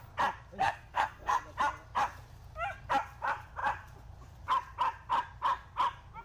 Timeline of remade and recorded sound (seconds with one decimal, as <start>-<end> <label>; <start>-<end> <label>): 0.0-0.6 recorded; 0.6-1.4 remade; 1.4-6.2 recorded